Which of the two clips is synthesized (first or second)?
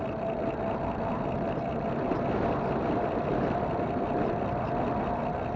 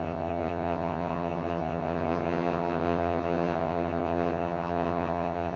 second